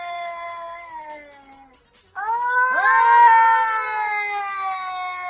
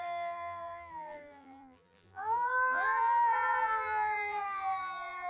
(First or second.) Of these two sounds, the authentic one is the first